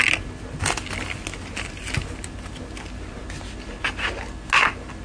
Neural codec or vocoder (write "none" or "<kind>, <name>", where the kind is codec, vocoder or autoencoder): none